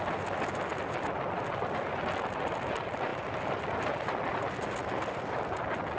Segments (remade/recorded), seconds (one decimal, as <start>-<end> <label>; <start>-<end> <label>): 0.0-6.0 recorded